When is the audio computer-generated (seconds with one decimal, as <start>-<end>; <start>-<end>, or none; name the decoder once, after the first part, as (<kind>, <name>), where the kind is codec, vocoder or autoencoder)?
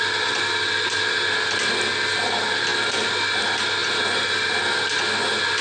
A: none